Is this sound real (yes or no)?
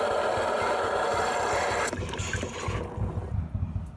yes